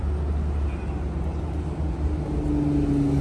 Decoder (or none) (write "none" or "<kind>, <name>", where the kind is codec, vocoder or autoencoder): none